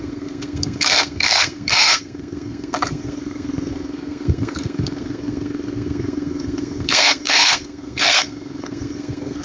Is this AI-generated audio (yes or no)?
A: yes